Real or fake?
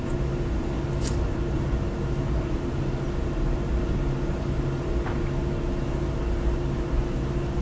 real